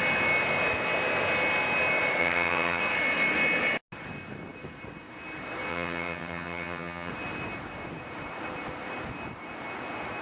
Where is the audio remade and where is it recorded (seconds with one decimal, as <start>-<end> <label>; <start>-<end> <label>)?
0.0-2.2 recorded; 2.2-2.8 remade; 2.8-5.7 recorded; 5.7-7.1 remade; 7.1-10.2 recorded